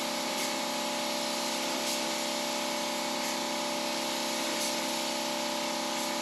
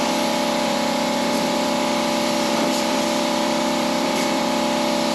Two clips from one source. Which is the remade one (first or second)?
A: second